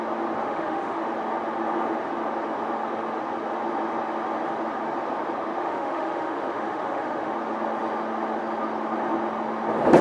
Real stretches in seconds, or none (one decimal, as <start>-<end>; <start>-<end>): 0.0-0.4; 1.0-5.6; 7.3-10.0